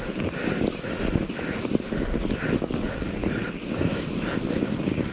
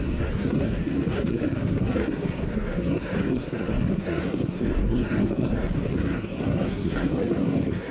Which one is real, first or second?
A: first